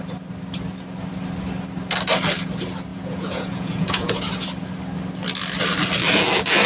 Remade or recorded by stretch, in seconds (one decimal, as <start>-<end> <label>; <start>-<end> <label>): 0.0-2.9 recorded; 2.9-4.1 remade; 4.1-6.7 recorded